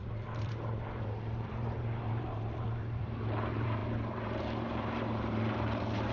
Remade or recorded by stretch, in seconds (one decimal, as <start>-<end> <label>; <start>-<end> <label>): 0.0-6.1 remade